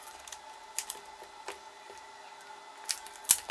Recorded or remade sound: recorded